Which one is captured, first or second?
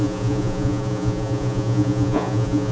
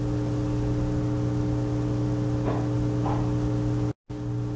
second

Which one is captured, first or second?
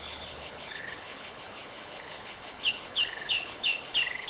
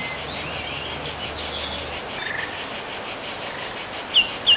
second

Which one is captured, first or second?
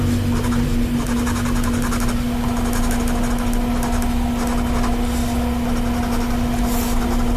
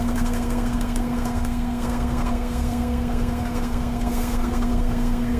first